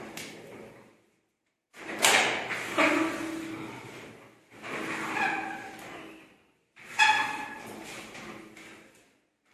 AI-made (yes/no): yes